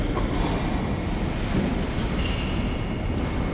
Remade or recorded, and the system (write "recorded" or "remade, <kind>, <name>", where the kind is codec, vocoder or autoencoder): recorded